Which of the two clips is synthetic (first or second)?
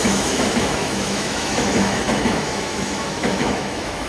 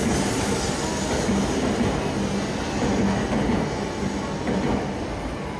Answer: first